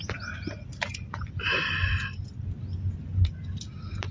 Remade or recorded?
recorded